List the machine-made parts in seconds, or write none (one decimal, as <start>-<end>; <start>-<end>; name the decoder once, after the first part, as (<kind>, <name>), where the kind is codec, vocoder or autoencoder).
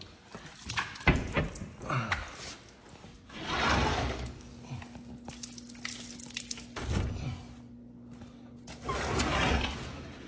3.9-4.5 (codec, DAC)